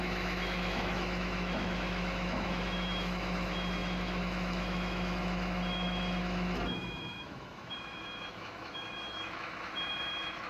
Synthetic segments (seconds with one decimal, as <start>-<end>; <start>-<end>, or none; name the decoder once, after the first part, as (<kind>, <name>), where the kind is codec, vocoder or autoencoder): 0.0-10.5 (autoencoder, DAC-VAE)